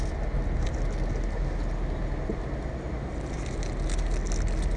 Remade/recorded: recorded